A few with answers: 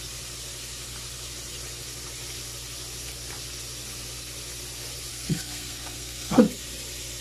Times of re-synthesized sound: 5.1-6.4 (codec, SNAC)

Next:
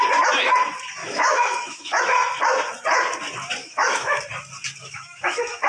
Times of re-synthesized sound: 1.0-2.0 (autoencoder, DAC-VAE); 3.6-4.2; 4.8-5.7